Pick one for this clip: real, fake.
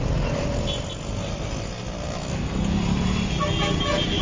real